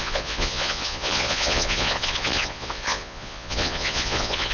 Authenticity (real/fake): fake